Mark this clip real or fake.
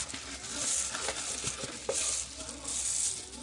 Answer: real